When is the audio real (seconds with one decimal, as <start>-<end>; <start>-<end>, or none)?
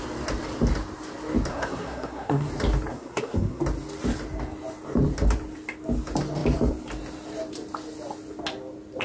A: 0.0-1.5; 2.5-2.9; 3.6-9.0